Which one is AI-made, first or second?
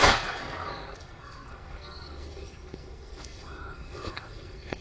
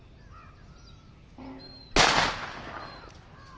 first